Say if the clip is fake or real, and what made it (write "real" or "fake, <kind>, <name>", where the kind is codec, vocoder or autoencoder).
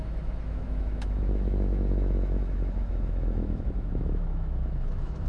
fake, autoencoder, DAC-VAE